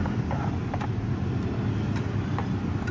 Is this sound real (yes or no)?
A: yes